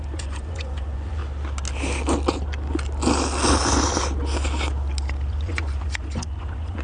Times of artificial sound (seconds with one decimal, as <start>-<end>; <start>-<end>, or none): 0.0-1.2; 5.3-6.8